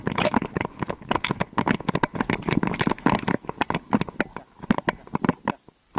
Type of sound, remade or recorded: recorded